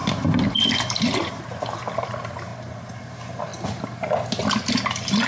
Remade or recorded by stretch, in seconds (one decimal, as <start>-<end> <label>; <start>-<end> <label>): 0.0-5.3 recorded